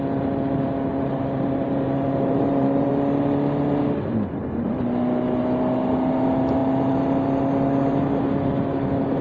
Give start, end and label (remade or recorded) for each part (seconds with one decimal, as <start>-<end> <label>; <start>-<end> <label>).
0.0-0.9 recorded; 0.9-2.9 remade; 2.9-9.2 recorded